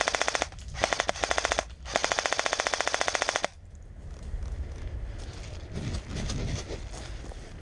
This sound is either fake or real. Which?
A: real